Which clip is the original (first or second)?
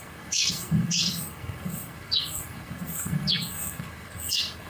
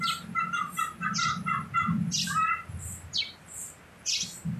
second